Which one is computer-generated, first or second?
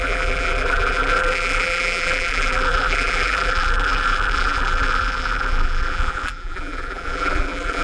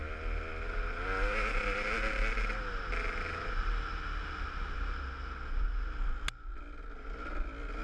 first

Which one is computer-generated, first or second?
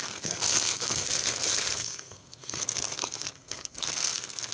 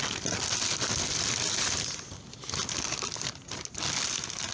first